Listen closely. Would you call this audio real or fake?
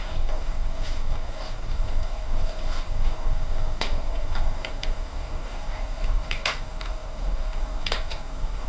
fake